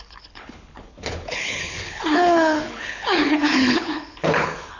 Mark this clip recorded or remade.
remade